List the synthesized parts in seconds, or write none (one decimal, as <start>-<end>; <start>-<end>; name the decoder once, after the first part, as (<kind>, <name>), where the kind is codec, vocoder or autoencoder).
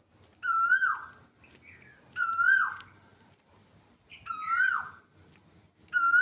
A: none